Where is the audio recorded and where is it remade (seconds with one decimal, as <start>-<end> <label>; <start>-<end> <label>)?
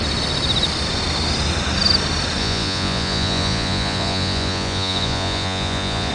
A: 0.0-2.4 recorded; 2.4-6.1 remade